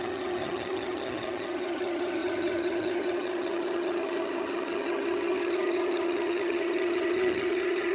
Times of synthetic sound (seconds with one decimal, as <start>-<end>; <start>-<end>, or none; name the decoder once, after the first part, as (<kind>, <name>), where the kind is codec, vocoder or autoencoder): 0.0-7.9 (vocoder, HiFi-GAN)